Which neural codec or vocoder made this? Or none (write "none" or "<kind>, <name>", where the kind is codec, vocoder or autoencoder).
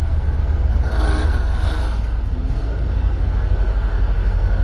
codec, SNAC